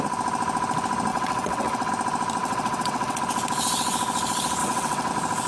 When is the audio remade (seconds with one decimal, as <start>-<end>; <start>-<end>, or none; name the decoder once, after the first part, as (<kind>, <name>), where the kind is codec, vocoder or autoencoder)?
1.1-1.9 (vocoder, WaveNeXt); 2.4-3.2; 4.6-5.1